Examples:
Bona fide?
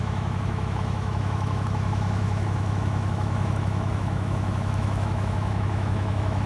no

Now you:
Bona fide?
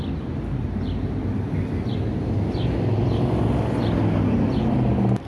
yes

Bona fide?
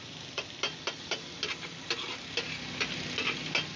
yes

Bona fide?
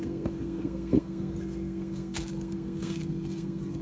no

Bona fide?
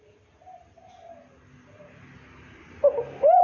yes